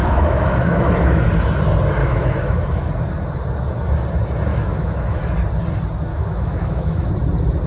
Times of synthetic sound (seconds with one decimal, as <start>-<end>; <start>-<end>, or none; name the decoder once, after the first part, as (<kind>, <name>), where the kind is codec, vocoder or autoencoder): 0.0-0.9 (autoencoder, DAC-VAE); 2.0-2.9; 4.5-5.2; 6.1-7.1